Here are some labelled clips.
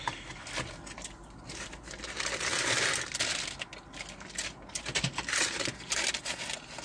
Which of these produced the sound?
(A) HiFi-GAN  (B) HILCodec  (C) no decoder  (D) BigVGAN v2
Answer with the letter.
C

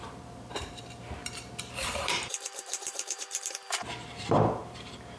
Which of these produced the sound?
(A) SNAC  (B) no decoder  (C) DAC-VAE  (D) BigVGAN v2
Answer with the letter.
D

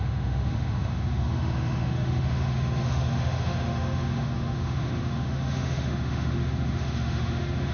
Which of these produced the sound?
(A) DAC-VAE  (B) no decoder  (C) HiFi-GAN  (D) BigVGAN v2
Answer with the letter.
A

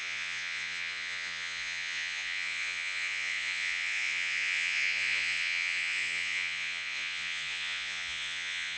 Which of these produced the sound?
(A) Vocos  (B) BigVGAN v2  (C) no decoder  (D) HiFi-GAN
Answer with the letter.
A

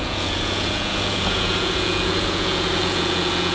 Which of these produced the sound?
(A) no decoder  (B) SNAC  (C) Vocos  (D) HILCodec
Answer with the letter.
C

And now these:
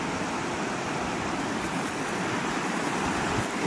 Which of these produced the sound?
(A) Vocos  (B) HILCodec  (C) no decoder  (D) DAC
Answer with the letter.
C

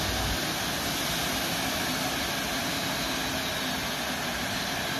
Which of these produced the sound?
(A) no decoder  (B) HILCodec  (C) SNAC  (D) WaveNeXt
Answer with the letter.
A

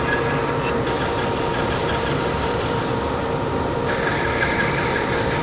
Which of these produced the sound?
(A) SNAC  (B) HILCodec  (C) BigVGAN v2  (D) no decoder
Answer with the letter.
D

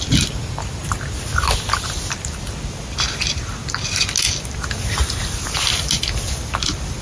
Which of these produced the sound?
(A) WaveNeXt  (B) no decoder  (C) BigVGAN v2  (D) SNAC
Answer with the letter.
B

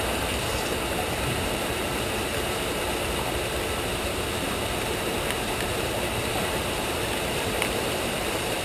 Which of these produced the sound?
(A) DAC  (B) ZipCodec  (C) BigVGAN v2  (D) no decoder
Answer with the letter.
C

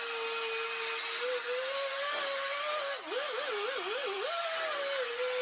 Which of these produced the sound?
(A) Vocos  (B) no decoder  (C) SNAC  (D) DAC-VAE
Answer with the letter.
B